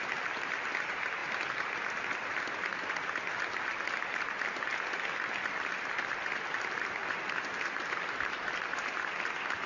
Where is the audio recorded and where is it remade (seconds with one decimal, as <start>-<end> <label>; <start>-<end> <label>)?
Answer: 0.0-9.7 recorded

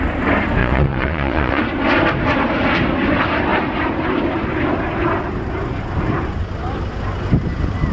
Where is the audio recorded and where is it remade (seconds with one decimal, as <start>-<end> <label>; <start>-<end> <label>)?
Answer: 0.0-0.6 recorded; 0.6-1.6 remade; 1.6-7.9 recorded

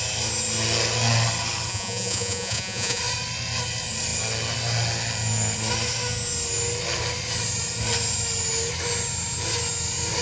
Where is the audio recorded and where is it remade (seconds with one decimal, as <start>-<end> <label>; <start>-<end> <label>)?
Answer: 0.0-1.7 recorded; 1.7-3.0 remade; 3.0-10.2 recorded

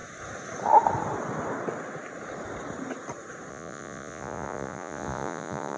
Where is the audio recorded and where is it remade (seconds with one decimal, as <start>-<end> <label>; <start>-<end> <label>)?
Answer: 0.0-3.5 recorded; 3.5-5.8 remade

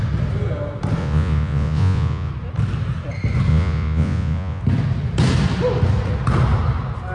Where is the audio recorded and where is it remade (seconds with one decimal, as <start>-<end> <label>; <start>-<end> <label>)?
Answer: 0.0-1.0 recorded; 1.0-2.3 remade; 2.3-3.5 recorded; 3.5-4.6 remade; 4.6-7.1 recorded

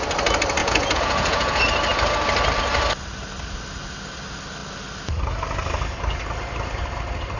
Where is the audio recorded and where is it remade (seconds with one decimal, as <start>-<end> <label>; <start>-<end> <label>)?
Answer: 0.0-0.6 recorded; 0.6-1.6 remade; 1.6-7.4 recorded

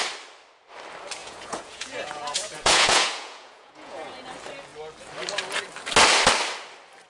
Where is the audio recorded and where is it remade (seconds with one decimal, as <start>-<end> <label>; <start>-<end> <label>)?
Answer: 0.0-1.2 recorded; 1.2-4.2 remade; 4.2-7.1 recorded